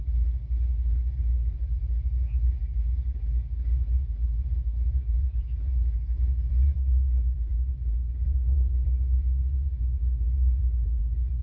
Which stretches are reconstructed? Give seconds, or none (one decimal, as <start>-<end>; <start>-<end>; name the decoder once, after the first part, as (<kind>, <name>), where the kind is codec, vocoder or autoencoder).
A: 0.0-11.4 (vocoder, BigVGAN v2)